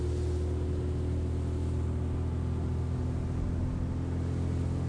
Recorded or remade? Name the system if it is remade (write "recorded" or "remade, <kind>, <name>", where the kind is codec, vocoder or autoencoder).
recorded